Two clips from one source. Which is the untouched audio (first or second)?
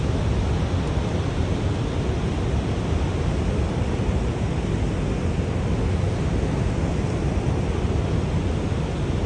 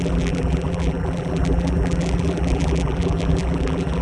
first